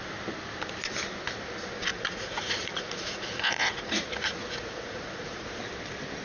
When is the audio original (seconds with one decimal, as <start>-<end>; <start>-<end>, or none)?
0.0-1.9; 5.6-6.2